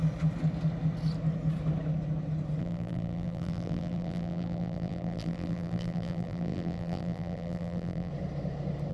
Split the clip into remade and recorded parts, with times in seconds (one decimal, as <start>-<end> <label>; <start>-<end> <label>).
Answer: 0.0-2.6 recorded; 2.6-8.1 remade; 8.1-8.9 recorded